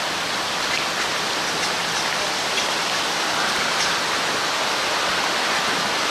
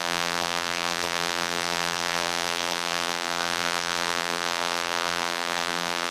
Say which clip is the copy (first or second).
second